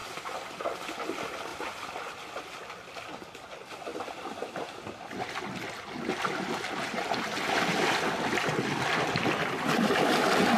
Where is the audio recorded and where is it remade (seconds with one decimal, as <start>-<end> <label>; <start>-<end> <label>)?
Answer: 0.0-10.6 recorded